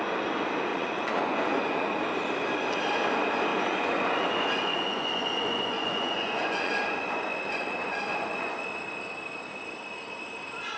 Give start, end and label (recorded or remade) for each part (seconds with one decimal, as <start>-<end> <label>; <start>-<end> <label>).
0.0-0.7 recorded; 0.7-2.0 remade; 2.0-3.5 recorded; 3.5-8.7 remade; 8.7-10.8 recorded